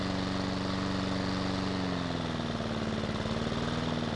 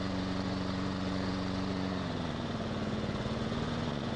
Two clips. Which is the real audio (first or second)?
first